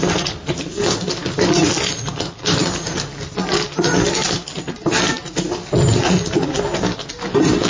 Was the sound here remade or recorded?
recorded